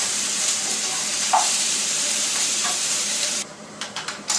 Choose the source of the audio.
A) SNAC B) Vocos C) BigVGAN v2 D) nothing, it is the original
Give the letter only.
C